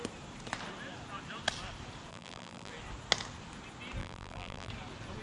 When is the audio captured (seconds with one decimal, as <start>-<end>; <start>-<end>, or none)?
0.0-2.1; 2.7-4.0; 4.7-5.2